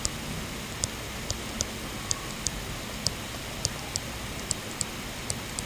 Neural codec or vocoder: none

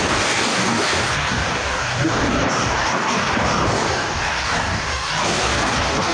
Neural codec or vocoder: codec, DAC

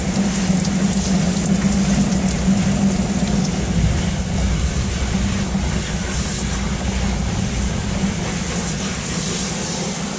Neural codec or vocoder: none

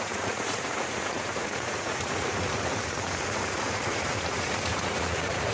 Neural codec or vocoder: vocoder, Vocos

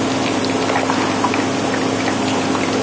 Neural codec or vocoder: none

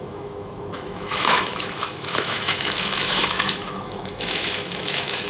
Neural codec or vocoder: autoencoder, DAC-VAE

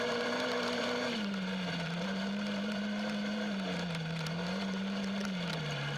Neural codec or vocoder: vocoder, BigVGAN v2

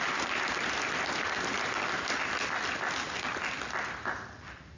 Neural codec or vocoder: none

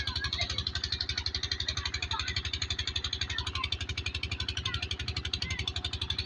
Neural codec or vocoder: vocoder, BigVGAN v2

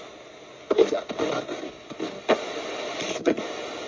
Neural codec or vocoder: none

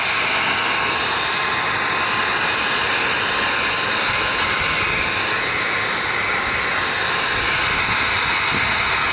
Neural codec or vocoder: none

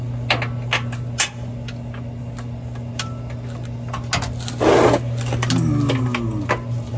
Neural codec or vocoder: none